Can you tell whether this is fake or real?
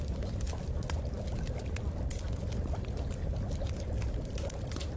real